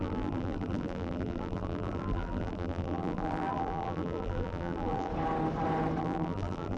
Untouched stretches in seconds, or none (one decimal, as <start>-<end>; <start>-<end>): 5.1-6.0